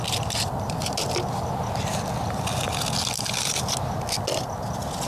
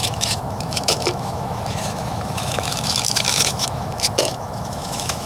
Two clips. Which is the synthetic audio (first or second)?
second